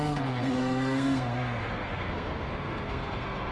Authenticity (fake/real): fake